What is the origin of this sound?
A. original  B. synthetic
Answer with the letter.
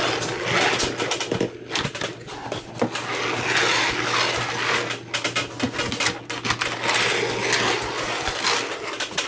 A